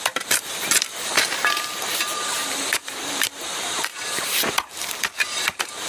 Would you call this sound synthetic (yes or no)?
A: yes